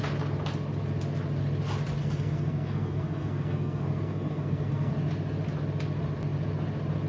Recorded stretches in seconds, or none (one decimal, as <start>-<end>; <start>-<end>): 0.0-2.0; 4.9-7.1